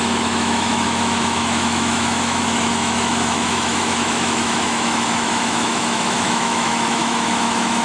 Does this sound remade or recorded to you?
remade